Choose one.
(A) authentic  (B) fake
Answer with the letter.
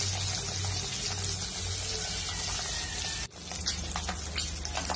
A